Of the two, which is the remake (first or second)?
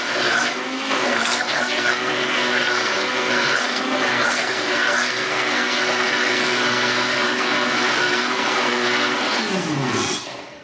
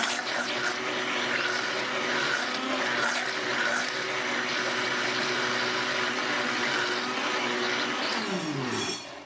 first